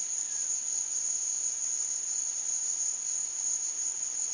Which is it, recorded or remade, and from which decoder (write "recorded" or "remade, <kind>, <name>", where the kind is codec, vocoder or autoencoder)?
recorded